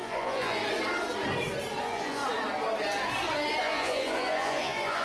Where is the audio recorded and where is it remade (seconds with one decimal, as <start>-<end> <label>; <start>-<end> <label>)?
0.0-0.6 remade; 0.6-1.8 recorded; 1.8-2.2 remade; 2.2-3.6 recorded; 3.6-5.0 remade